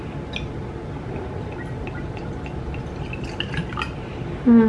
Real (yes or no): yes